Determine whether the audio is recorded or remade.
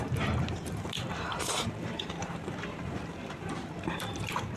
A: remade